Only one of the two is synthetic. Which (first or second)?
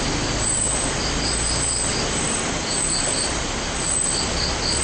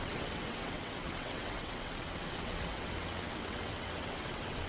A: second